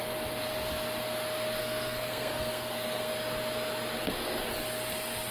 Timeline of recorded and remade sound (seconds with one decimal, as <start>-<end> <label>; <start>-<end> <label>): 0.0-1.6 recorded; 1.6-3.1 remade; 3.1-5.3 recorded